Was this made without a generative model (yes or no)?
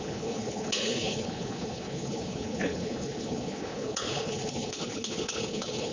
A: no